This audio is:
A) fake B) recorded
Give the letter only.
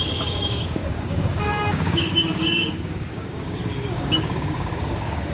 A